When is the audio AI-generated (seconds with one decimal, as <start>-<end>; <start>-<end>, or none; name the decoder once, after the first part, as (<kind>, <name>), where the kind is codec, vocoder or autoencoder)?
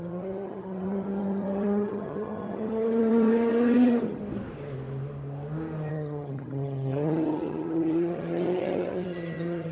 0.0-4.2 (vocoder, HiFi-GAN); 5.9-9.7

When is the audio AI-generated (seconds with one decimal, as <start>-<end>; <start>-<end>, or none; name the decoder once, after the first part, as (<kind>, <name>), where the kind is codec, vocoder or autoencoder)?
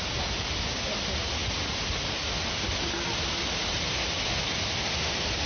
none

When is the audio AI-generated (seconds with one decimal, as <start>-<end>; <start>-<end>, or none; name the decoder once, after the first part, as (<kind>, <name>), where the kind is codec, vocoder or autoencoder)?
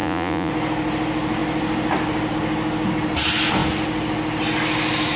0.0-0.5 (vocoder, Vocos)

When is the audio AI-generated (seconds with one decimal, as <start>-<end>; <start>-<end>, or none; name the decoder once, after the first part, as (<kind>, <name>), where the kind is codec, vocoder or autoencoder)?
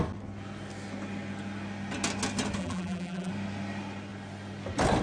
2.6-3.3 (vocoder, BigVGAN v2)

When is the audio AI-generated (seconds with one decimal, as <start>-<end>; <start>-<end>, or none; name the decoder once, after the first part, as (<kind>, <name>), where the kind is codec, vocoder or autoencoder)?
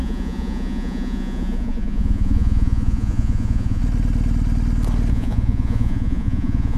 0.0-3.8 (vocoder, Vocos); 5.1-6.8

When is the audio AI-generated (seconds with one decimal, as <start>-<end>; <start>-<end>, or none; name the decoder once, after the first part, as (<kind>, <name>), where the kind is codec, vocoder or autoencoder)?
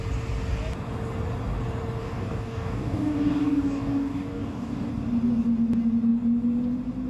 2.0-4.9 (codec, DAC)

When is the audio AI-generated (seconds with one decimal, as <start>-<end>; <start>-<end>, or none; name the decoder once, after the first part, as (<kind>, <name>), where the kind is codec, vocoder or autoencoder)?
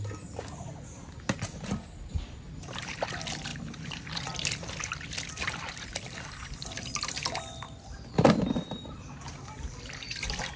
none